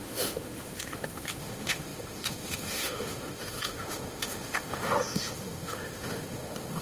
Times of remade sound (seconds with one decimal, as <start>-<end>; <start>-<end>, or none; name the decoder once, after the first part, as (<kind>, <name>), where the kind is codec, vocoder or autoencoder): 0.0-6.8 (autoencoder, DAC-VAE)